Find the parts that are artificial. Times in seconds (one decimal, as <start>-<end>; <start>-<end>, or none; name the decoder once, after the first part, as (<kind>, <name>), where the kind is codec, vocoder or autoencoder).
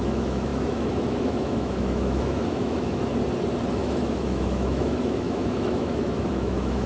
0.0-3.1 (autoencoder, DAC-VAE); 3.7-6.9